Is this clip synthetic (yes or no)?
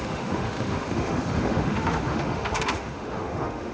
yes